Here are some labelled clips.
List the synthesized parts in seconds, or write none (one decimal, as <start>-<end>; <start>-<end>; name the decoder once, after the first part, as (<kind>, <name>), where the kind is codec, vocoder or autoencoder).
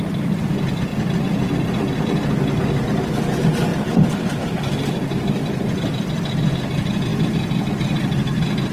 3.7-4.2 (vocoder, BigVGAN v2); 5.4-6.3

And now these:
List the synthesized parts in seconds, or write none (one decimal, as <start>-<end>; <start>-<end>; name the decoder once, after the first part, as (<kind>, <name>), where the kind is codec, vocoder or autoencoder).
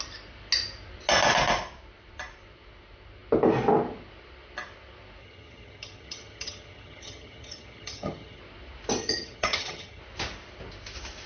5.2-8.4 (vocoder, HiFi-GAN); 9.0-10.0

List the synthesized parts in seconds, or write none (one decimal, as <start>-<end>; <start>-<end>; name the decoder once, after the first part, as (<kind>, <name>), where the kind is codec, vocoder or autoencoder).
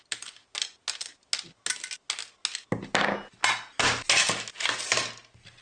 none